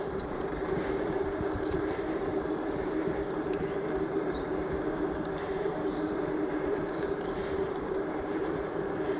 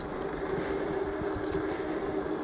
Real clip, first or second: second